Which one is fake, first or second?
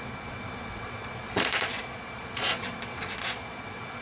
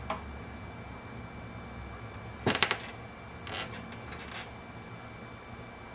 first